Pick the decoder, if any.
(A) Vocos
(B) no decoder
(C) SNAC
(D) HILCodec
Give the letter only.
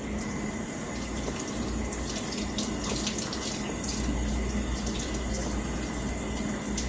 B